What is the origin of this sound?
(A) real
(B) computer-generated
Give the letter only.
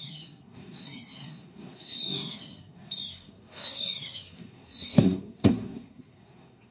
B